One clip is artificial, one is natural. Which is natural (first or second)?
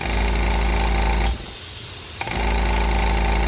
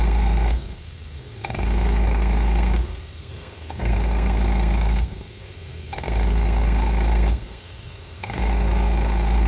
first